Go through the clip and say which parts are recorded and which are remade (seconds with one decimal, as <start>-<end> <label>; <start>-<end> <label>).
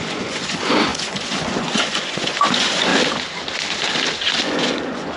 0.0-2.9 remade; 2.9-4.4 recorded; 4.4-5.2 remade